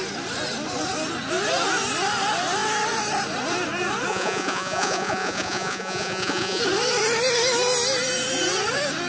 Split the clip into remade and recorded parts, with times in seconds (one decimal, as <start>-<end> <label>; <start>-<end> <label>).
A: 0.0-4.1 recorded; 4.1-6.6 remade; 6.6-9.1 recorded